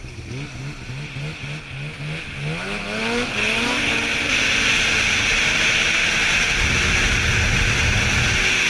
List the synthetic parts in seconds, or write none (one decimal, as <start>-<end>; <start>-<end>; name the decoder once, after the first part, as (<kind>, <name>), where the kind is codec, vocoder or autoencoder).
4.1-6.5 (vocoder, BigVGAN v2)

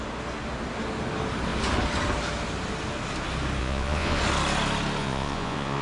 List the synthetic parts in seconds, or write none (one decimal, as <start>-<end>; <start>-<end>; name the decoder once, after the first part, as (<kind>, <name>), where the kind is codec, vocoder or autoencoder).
3.6-4.2 (vocoder, Vocos); 5.0-5.8

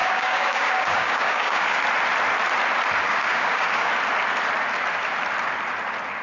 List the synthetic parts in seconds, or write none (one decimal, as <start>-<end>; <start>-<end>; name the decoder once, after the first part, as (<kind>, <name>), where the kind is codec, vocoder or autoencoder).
0.0-1.8 (codec, DAC); 3.1-3.9

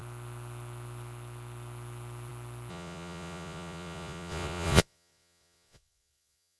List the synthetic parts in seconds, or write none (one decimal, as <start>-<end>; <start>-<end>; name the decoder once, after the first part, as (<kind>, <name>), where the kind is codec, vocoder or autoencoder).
2.7-6.6 (vocoder, Vocos)

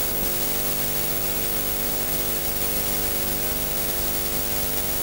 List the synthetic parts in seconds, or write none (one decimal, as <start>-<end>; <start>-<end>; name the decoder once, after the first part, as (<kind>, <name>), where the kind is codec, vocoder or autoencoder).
none